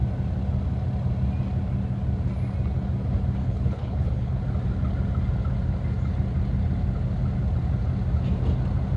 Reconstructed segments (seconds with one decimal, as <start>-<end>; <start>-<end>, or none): 3.4-4.4